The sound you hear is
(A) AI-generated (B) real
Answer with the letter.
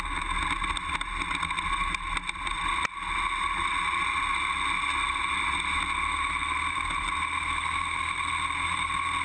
B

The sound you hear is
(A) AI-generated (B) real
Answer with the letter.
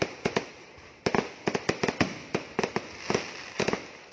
B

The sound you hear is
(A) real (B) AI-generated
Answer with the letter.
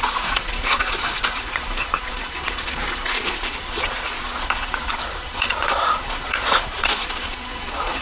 B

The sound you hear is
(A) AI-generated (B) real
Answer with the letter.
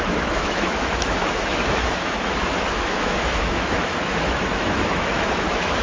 A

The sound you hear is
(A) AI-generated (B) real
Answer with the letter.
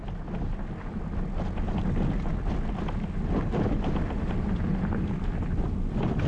B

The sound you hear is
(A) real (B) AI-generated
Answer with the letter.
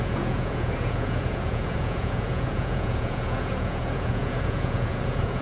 B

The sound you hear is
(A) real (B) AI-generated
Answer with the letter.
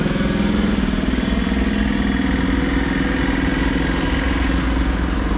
A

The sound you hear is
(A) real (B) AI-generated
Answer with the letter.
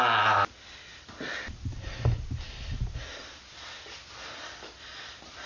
A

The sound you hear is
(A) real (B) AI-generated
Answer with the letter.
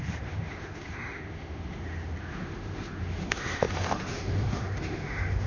B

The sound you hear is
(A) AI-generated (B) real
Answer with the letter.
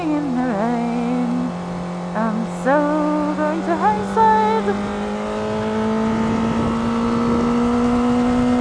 B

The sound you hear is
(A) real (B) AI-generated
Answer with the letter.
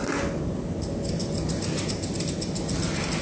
A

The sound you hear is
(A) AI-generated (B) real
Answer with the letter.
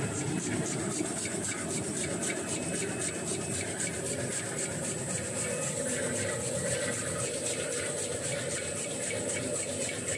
B